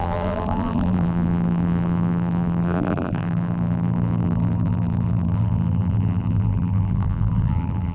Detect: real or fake fake